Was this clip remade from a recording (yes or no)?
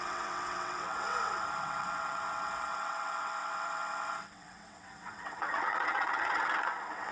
yes